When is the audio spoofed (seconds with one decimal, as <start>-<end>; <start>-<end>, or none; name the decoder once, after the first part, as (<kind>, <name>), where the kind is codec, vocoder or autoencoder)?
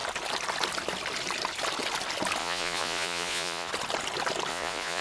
2.4-3.7 (vocoder, Vocos); 4.5-5.0